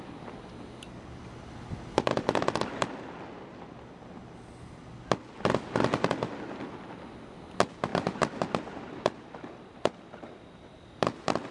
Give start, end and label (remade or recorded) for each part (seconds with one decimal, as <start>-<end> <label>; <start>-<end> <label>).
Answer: 0.0-11.5 recorded